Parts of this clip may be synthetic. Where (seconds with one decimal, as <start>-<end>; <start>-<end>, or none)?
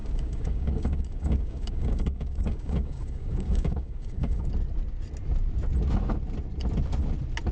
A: 0.0-4.5